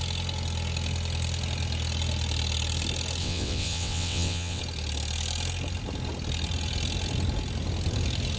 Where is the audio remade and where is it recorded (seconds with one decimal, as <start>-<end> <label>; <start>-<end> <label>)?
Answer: 0.0-3.2 recorded; 3.2-4.6 remade; 4.6-8.4 recorded